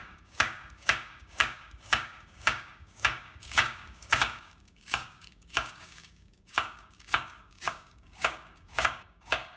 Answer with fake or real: fake